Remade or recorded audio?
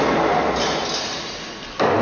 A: recorded